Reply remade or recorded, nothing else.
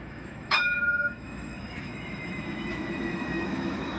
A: remade